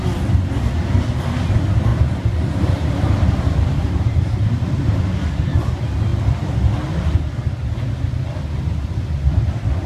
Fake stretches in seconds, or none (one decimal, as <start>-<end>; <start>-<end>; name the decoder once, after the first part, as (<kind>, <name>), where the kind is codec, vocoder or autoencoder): 1.9-5.0 (vocoder, BigVGAN v2)